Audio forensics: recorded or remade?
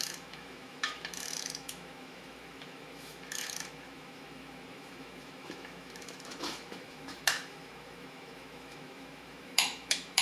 remade